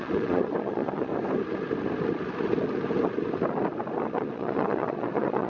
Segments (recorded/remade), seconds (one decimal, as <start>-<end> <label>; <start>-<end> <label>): 0.0-1.1 remade; 1.1-4.0 recorded; 4.0-5.5 remade